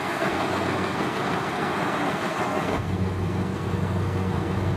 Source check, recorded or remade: remade